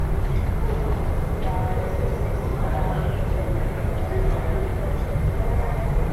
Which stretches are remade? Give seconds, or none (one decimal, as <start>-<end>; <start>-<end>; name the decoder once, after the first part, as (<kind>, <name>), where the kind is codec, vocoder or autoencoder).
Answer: 0.0-1.0 (vocoder, BigVGAN v2); 2.5-3.8; 4.7-6.1